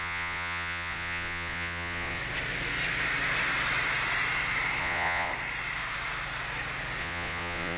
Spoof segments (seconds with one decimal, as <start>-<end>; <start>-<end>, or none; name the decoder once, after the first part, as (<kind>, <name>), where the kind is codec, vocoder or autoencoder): 0.0-2.2 (vocoder, Vocos); 4.8-5.3; 7.0-7.8